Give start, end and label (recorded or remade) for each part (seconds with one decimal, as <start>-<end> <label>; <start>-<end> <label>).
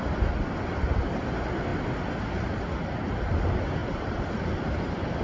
0.0-5.2 recorded